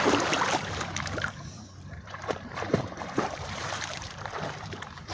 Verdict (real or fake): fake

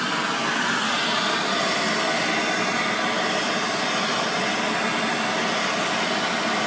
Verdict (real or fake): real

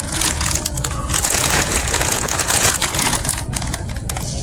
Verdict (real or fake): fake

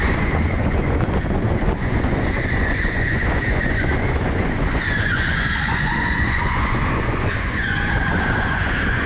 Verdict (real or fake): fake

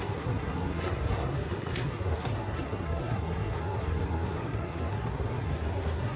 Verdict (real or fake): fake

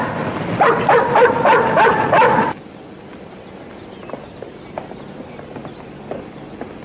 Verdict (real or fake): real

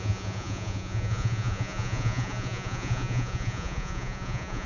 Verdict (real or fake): fake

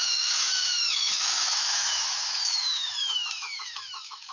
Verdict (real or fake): fake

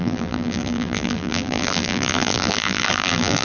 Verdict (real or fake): fake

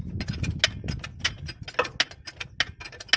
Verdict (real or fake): real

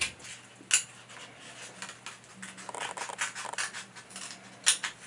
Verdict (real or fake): real